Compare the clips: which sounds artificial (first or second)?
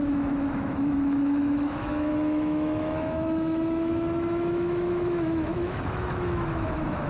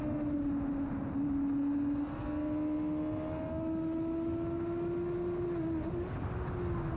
first